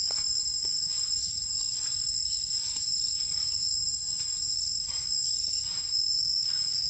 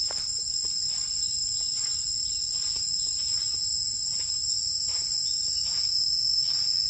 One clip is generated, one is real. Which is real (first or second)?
second